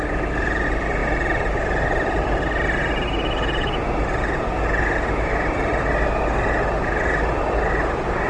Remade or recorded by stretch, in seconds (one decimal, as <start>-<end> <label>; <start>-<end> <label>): 0.0-8.3 recorded